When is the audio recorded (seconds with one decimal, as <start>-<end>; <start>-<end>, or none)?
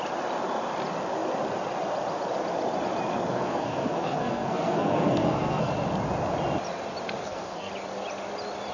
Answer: 0.0-3.3; 5.7-7.2; 7.7-8.7